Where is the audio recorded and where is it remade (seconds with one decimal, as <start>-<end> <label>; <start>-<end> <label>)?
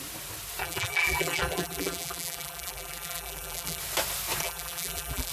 0.0-0.6 recorded; 0.6-3.8 remade; 3.8-4.4 recorded; 4.4-5.3 remade